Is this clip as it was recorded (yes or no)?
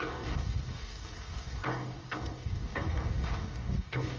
no